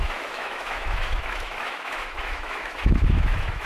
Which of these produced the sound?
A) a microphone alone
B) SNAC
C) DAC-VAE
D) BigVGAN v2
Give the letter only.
C